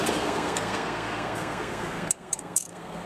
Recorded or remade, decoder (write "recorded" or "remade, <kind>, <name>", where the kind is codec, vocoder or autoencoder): remade, codec, SNAC